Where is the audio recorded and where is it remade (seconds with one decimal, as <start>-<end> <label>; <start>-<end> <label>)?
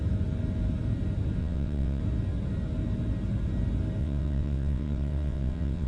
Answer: 0.0-1.4 recorded; 1.4-2.0 remade; 2.0-4.0 recorded; 4.0-5.9 remade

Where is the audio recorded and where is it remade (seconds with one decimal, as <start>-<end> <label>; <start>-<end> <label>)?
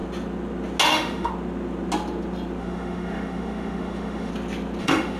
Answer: 0.0-0.9 recorded; 0.9-1.3 remade; 1.3-2.6 recorded; 2.6-4.3 remade; 4.3-4.8 recorded; 4.8-5.2 remade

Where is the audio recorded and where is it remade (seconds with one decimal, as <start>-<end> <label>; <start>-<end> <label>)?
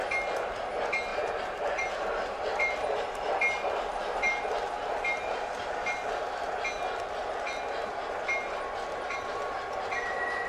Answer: 0.0-1.1 recorded; 1.1-6.2 remade; 6.2-7.2 recorded; 7.2-10.0 remade; 10.0-10.5 recorded